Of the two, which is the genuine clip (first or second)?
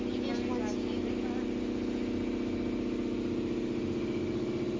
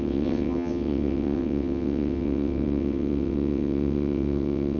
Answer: first